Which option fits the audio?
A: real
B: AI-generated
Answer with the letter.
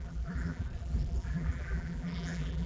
B